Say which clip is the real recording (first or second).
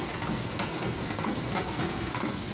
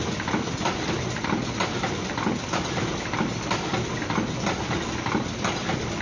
second